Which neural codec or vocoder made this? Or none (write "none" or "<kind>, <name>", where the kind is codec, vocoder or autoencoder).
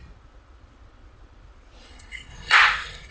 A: vocoder, BigVGAN v2